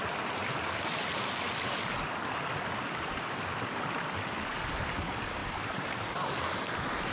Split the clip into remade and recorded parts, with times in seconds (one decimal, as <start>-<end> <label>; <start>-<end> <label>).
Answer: 0.0-5.4 recorded; 5.4-6.4 remade; 6.4-7.1 recorded